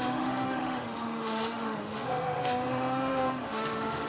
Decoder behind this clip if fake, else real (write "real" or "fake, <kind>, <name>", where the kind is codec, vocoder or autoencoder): fake, autoencoder, DAC-VAE